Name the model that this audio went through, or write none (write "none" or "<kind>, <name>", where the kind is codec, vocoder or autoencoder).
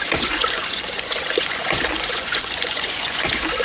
vocoder, Vocos